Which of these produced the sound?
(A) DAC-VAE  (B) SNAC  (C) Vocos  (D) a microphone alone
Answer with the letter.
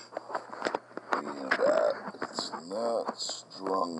D